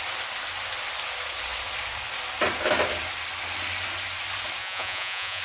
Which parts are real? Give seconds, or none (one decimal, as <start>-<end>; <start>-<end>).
0.0-4.6